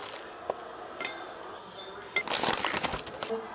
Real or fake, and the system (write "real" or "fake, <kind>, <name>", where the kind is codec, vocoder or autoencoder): real